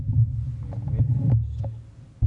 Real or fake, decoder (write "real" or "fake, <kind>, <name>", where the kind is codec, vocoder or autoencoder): real